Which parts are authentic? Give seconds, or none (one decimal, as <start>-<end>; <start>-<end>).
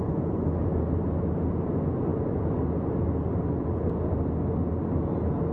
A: 0.0-5.5